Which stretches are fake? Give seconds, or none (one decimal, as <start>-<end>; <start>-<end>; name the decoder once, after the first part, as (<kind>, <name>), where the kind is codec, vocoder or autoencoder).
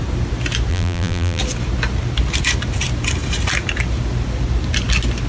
0.7-1.4 (vocoder, BigVGAN v2)